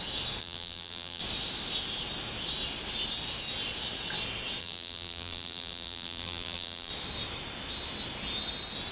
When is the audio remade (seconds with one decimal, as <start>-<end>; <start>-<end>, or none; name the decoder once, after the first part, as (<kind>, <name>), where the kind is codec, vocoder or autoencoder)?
0.4-1.2 (vocoder, BigVGAN v2); 4.6-6.9